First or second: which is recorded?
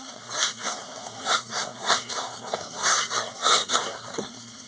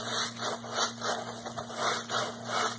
second